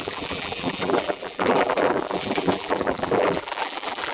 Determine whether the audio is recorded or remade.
remade